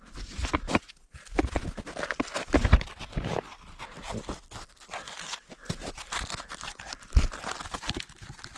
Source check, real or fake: real